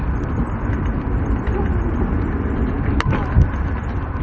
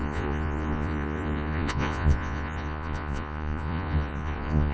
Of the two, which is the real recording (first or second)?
first